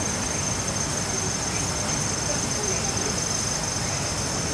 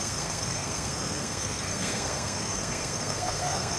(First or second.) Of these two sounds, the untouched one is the first